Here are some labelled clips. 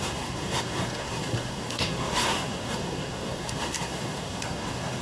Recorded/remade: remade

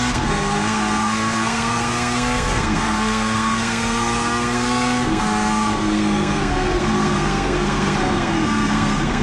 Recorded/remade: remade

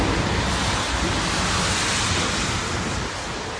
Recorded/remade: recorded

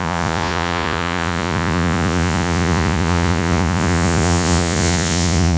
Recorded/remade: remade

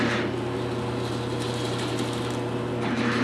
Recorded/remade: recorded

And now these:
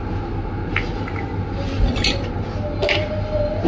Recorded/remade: recorded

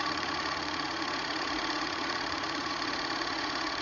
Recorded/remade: remade